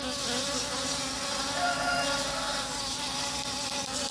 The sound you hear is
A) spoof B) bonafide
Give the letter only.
B